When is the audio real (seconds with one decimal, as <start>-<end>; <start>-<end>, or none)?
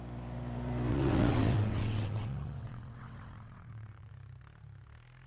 0.0-0.9; 4.1-5.3